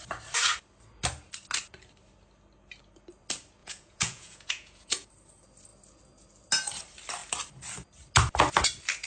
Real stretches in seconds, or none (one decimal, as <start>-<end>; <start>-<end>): 0.0-3.6; 5.1-9.1